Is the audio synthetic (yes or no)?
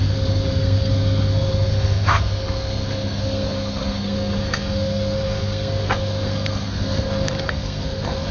yes